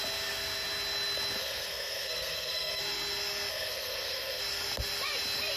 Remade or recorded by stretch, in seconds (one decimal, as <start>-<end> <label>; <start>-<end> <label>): 0.0-1.4 recorded; 1.4-2.8 remade; 2.8-3.5 recorded; 3.5-4.4 remade; 4.4-5.6 recorded